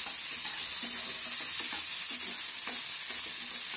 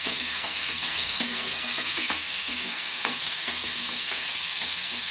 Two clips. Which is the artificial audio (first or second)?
second